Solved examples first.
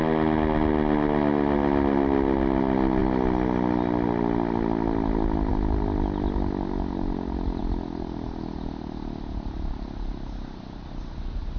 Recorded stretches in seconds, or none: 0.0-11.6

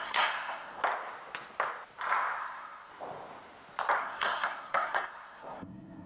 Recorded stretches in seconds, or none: 0.8-2.4; 2.9-4.0

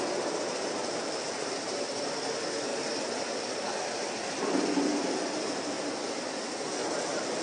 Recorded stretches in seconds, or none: 0.0-0.8; 2.2-2.7; 3.2-4.9; 6.3-6.8

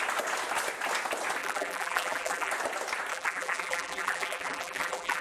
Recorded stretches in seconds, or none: 0.0-1.4; 2.5-3.1

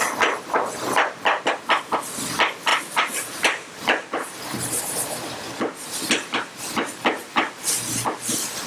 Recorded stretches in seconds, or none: 0.0-2.7; 4.8-7.2

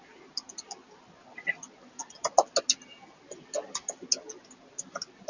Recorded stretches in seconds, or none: 0.0-5.3

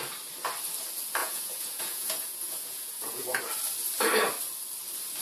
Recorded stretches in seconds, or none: 0.0-1.2; 3.4-5.2